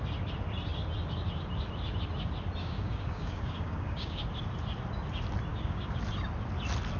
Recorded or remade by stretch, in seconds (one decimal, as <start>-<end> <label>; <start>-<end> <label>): 0.0-2.6 recorded; 2.6-4.2 remade; 4.2-5.5 recorded; 5.5-6.0 remade; 6.0-7.0 recorded